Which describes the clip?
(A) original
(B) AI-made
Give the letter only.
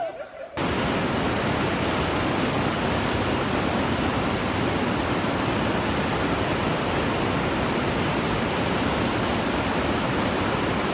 A